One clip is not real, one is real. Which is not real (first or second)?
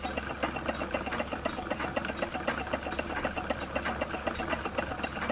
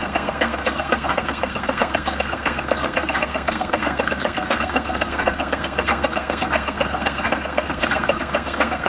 second